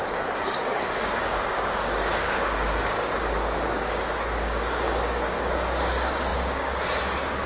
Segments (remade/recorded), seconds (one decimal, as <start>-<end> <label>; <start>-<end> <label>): 0.0-7.5 remade